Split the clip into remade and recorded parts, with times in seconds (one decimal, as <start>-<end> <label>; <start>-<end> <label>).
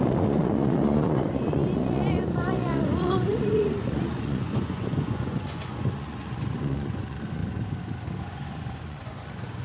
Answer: 0.0-7.4 remade; 7.4-8.2 recorded; 8.2-9.6 remade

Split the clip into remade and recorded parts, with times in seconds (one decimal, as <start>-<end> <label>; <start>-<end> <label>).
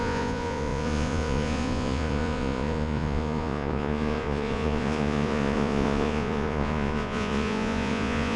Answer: 0.0-8.4 remade